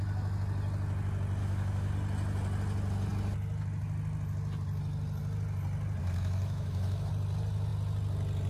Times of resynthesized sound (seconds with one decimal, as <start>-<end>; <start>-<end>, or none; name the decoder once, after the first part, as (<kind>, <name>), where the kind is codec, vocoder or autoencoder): 1.4-1.9 (autoencoder, DAC-VAE); 6.0-7.1